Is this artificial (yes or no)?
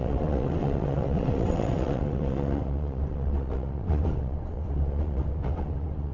yes